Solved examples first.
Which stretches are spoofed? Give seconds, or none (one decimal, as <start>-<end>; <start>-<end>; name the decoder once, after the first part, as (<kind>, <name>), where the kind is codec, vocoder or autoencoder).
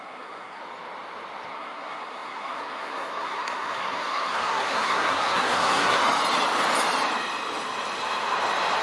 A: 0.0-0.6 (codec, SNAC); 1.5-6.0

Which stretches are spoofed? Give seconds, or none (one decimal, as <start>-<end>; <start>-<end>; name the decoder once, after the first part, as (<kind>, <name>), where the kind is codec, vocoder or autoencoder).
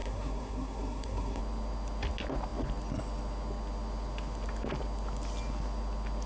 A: 0.0-1.4 (codec, SNAC)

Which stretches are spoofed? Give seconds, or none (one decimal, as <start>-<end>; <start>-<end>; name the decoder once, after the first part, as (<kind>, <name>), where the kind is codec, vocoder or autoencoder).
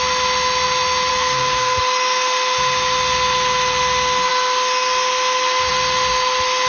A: 1.1-1.8 (codec, SNAC)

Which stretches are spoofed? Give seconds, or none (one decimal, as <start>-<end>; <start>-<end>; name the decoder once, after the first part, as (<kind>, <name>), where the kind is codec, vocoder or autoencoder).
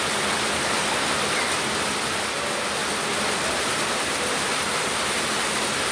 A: none